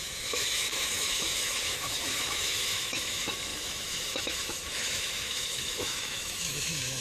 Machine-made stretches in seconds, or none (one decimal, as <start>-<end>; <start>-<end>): 0.0-7.0